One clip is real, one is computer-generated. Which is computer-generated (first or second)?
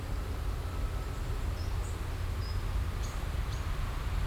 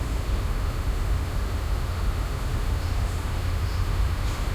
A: second